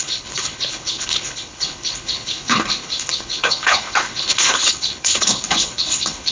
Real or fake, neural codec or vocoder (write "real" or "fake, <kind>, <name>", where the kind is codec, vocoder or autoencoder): fake, codec, HILCodec